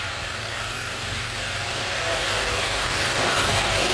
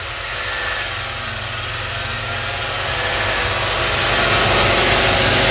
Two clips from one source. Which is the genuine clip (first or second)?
second